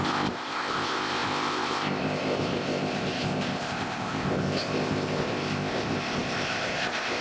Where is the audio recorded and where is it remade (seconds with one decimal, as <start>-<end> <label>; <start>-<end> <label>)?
0.0-7.2 remade